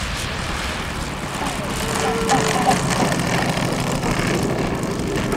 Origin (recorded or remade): recorded